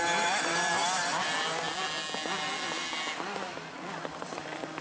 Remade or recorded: recorded